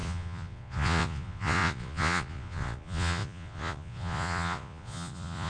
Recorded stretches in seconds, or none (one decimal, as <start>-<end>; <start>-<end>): none